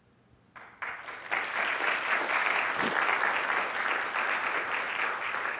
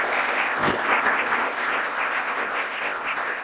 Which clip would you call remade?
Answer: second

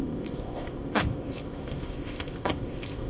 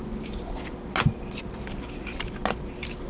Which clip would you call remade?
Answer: first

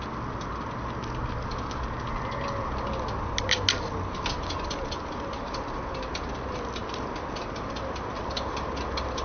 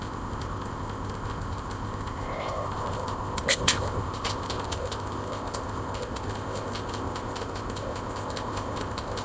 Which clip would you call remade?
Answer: second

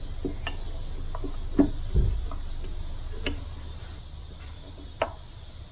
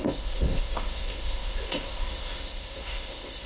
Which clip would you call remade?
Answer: second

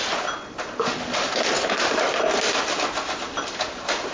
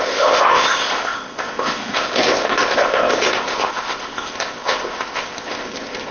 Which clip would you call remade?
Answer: second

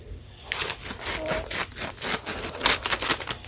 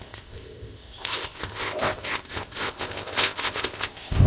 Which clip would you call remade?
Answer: second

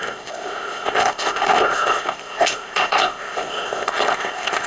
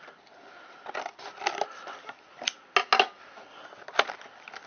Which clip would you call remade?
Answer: first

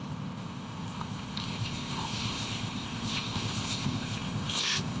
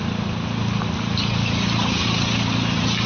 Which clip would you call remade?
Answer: first